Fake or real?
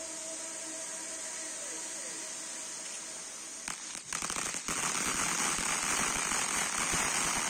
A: real